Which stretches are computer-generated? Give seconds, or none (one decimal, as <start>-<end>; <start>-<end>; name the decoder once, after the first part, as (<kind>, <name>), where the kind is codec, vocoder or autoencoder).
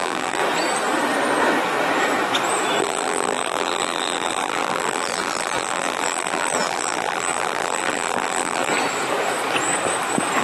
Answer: 0.0-0.4 (vocoder, BigVGAN v2); 2.8-8.7